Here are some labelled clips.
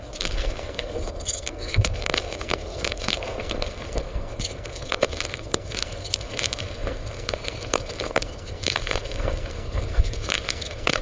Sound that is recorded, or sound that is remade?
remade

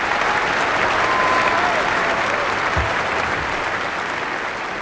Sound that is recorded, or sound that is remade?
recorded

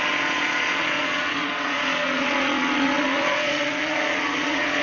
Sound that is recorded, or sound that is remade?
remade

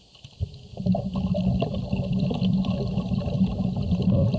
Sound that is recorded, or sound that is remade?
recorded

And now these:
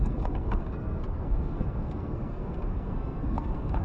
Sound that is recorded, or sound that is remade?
remade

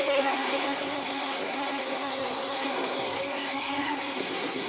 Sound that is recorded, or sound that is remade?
remade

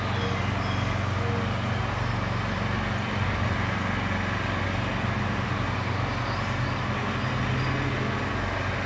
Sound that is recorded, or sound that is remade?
recorded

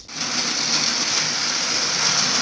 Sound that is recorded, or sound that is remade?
recorded